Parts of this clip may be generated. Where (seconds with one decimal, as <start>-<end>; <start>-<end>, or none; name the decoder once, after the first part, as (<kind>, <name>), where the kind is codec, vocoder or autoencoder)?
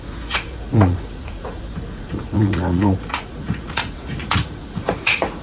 0.0-5.4 (vocoder, Vocos)